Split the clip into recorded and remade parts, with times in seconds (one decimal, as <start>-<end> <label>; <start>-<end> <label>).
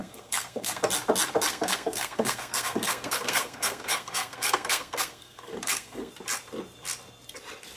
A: 0.0-0.8 remade; 0.8-1.5 recorded; 1.5-6.1 remade; 6.1-7.8 recorded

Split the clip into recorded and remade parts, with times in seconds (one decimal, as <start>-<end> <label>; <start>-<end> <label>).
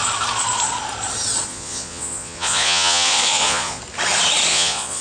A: 0.0-1.5 recorded; 1.5-3.8 remade; 3.8-4.5 recorded; 4.5-5.0 remade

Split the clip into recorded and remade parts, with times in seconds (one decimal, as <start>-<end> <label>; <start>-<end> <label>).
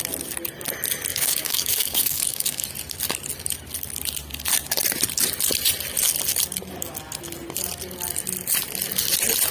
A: 0.0-1.1 recorded; 1.1-2.6 remade; 2.6-9.5 recorded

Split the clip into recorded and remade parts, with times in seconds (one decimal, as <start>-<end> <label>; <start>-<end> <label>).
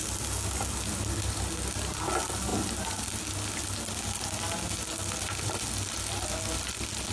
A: 0.0-7.1 recorded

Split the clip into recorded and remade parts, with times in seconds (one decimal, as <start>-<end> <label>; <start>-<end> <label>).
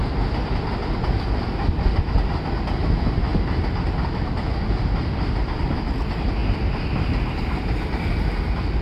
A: 0.0-8.8 recorded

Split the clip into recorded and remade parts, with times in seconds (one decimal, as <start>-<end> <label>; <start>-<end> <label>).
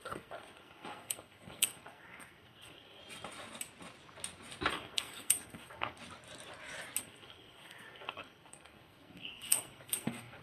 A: 0.0-3.0 remade; 3.0-4.7 recorded; 4.7-6.0 remade; 6.0-7.0 recorded; 7.0-10.4 remade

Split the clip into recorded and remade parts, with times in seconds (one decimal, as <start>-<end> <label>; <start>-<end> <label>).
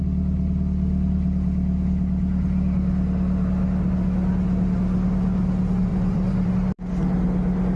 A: 0.0-5.9 recorded; 5.9-6.5 remade; 6.5-7.8 recorded